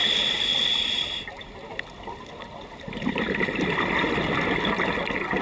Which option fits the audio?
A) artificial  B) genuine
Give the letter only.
B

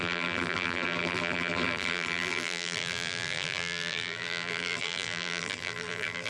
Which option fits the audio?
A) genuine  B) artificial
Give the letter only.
B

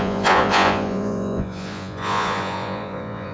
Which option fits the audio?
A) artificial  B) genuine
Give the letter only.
A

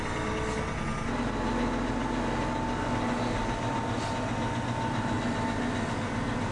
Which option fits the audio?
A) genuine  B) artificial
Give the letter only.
A